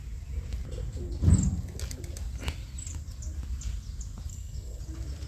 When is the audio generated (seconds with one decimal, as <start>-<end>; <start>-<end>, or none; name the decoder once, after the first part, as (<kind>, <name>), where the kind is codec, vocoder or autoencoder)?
4.3-4.8 (codec, SNAC)